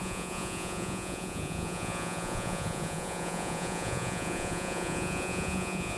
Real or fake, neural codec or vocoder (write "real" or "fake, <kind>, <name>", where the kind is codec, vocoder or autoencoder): fake, vocoder, Vocos